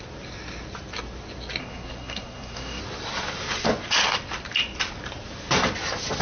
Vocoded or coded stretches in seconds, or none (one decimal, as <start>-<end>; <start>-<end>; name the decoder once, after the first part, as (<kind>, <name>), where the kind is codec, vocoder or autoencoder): 1.6-2.8 (codec, SNAC)

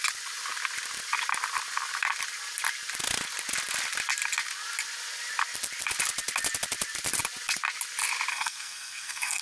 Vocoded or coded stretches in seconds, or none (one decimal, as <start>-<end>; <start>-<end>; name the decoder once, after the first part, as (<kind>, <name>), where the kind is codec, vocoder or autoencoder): 8.3-9.4 (codec, SNAC)

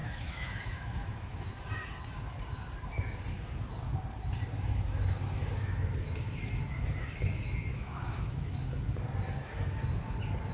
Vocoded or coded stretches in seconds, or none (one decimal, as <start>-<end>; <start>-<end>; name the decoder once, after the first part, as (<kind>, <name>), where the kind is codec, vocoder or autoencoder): 0.0-1.5 (autoencoder, DAC-VAE); 7.7-8.8

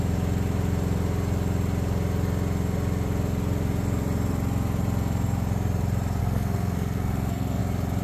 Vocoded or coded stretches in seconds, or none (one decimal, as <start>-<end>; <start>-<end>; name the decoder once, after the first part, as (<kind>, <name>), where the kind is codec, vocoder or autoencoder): 6.2-7.6 (codec, SNAC)

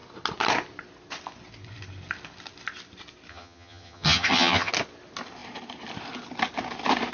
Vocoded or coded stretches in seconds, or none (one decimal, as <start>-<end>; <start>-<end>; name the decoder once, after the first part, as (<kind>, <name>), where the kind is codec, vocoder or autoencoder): 3.3-4.7 (vocoder, HiFi-GAN)

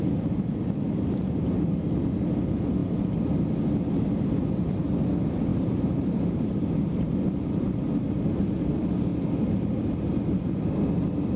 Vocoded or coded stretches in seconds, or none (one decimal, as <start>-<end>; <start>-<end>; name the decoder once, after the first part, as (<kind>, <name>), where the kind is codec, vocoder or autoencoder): 5.5-6.7 (vocoder, BigVGAN v2)

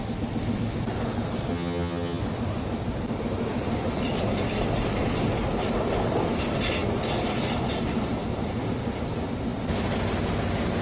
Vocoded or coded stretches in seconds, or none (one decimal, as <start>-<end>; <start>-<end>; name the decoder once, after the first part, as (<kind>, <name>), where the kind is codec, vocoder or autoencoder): 1.5-2.2 (vocoder, HiFi-GAN)